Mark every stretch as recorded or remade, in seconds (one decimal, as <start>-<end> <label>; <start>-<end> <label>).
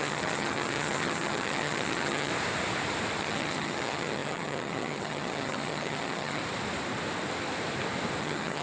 0.0-2.3 remade; 2.3-3.2 recorded; 3.2-6.4 remade; 6.4-8.2 recorded; 8.2-8.6 remade